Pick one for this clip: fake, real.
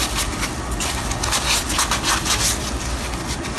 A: real